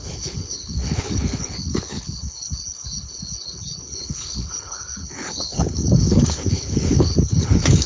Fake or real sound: fake